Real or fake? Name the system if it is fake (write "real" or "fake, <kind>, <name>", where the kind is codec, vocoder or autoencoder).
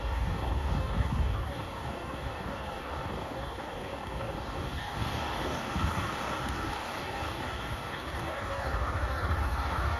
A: fake, codec, DAC